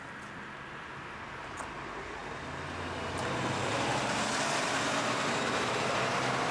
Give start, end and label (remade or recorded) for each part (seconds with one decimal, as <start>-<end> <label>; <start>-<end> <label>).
0.0-6.5 recorded

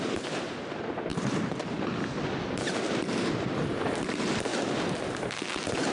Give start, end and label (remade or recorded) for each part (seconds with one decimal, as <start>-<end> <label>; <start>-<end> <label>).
0.0-5.9 recorded